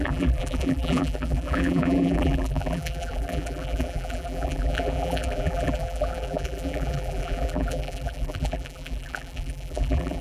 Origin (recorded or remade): remade